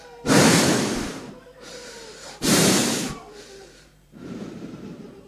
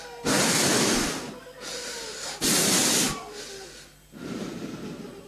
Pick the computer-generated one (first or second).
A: first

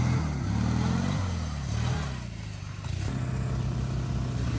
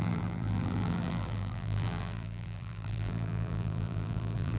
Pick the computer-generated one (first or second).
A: second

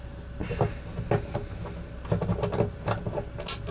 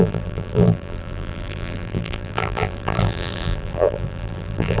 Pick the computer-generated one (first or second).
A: second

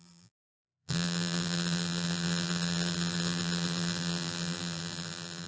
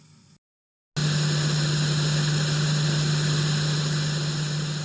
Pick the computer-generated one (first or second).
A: first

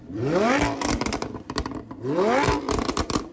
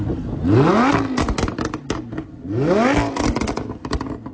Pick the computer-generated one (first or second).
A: first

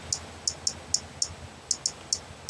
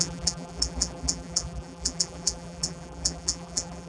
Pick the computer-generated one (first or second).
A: second